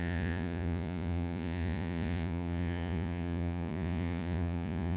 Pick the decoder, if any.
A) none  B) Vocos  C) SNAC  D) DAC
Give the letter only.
B